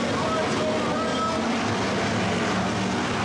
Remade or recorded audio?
recorded